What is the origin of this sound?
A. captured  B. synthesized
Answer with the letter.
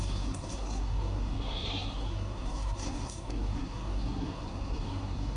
B